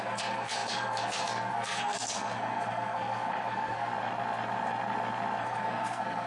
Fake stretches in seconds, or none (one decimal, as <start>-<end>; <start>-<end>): 0.0-3.9; 5.4-6.3